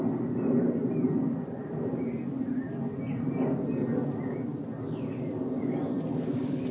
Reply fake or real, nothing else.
real